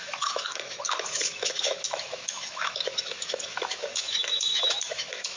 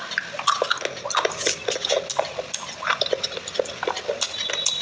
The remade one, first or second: first